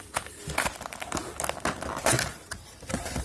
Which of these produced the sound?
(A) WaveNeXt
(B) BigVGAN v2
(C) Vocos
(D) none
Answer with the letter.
D